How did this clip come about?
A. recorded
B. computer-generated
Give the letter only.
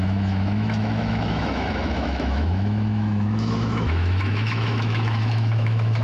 B